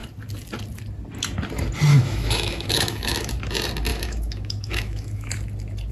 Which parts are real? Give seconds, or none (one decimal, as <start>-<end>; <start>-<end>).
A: 0.0-1.9; 3.3-3.9; 5.3-5.9